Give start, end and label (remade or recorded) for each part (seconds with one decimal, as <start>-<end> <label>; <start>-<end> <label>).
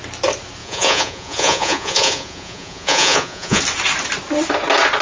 0.0-0.6 recorded; 0.6-3.6 remade; 3.6-5.0 recorded